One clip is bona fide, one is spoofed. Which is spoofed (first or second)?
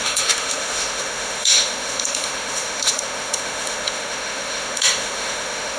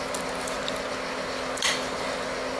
first